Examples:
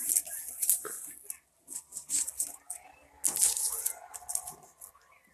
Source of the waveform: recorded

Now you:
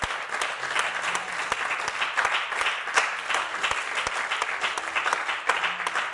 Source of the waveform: recorded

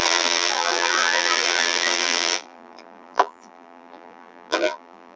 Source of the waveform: remade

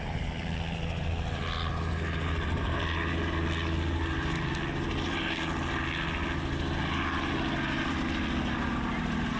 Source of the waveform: recorded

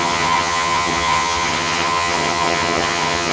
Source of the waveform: remade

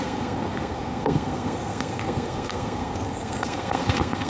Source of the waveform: remade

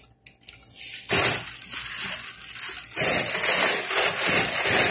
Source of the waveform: recorded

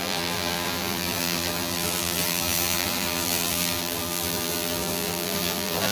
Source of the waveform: remade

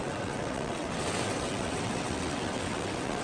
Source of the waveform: remade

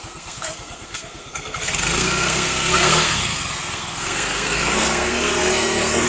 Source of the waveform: remade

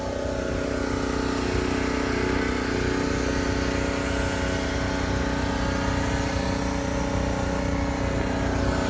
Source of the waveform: recorded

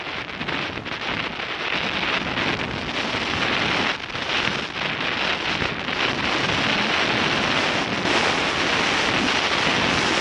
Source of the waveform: recorded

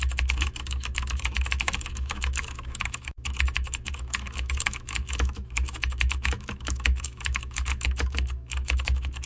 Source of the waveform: remade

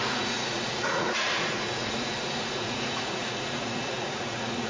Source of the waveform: remade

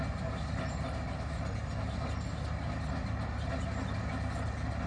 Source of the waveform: recorded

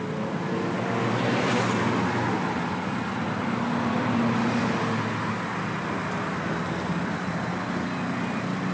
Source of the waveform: recorded